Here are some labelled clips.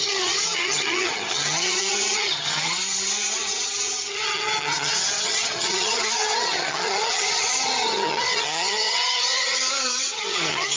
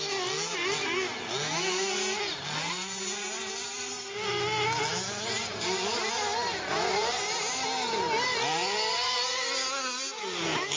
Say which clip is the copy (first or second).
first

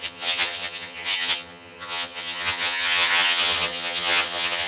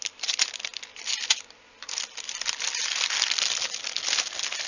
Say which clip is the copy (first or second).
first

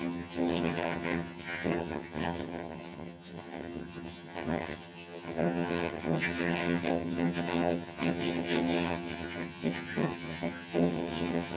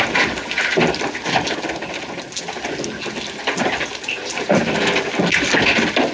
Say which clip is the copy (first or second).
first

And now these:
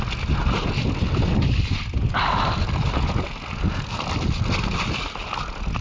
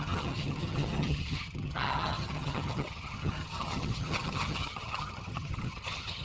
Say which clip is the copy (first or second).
second